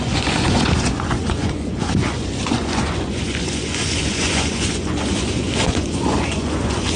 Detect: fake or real fake